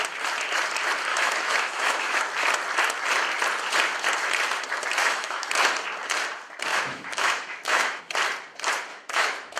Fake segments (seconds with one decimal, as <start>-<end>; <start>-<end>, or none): 1.1-2.2; 5.0-5.5; 6.7-8.0; 8.9-9.6